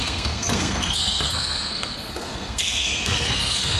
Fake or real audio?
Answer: fake